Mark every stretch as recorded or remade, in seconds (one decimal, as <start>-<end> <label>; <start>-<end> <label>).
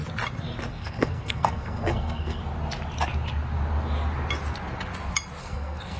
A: 0.0-0.7 recorded; 0.7-2.4 remade; 2.4-5.4 recorded; 5.4-6.0 remade